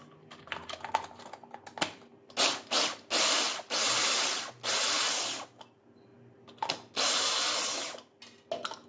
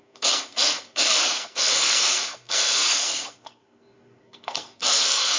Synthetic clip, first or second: second